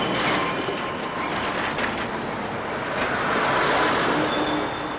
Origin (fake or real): real